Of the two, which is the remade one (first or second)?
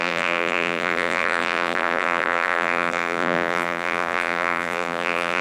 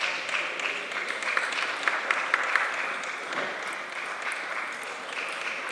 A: first